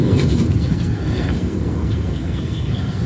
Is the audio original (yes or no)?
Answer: no